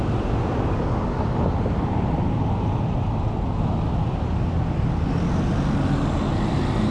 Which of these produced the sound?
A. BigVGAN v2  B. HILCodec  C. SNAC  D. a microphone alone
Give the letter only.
D